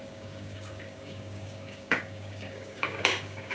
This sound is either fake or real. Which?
fake